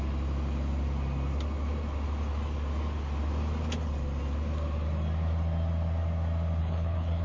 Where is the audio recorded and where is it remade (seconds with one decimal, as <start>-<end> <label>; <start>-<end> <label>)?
0.0-6.6 recorded; 6.6-7.2 remade

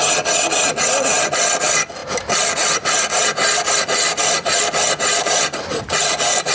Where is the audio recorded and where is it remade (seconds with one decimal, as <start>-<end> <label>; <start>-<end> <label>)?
0.0-6.5 recorded

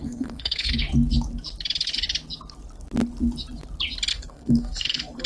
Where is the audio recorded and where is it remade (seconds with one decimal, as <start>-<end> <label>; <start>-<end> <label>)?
0.0-0.9 remade; 0.9-4.1 recorded; 4.1-5.3 remade

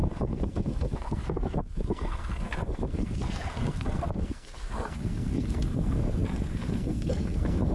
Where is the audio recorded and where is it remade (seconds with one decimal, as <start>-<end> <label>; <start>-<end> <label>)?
0.0-7.7 remade

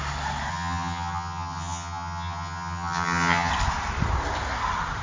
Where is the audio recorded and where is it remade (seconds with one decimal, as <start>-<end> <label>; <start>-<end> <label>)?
0.0-0.5 recorded; 0.5-3.5 remade; 3.5-5.0 recorded